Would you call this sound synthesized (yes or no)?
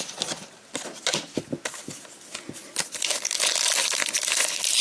no